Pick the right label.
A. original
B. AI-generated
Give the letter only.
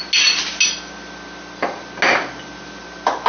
A